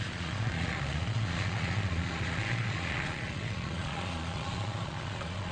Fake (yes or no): yes